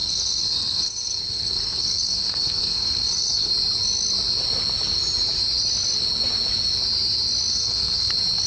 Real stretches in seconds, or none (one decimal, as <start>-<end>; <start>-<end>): 3.5-7.5; 8.1-8.5